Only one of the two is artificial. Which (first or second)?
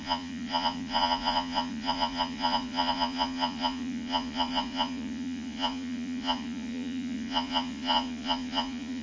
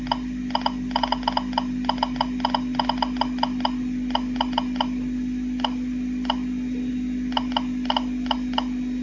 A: first